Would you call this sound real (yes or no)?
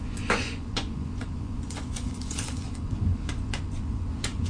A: no